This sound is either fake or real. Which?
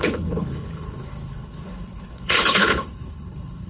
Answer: fake